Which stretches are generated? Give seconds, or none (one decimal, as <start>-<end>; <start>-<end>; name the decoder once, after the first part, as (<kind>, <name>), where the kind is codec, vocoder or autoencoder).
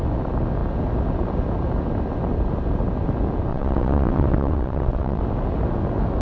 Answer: 3.5-5.2 (vocoder, WaveNeXt)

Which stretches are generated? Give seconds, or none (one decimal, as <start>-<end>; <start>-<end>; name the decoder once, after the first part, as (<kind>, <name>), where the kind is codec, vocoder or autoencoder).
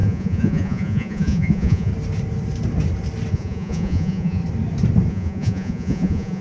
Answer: 0.0-1.9 (vocoder, Vocos); 3.3-4.4; 5.1-6.4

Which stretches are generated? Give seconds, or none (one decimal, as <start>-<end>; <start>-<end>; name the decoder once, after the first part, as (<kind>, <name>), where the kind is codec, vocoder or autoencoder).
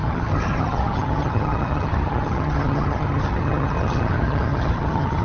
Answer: 0.0-5.2 (vocoder, HiFi-GAN)